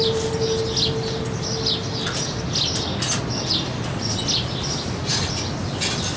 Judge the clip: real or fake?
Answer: real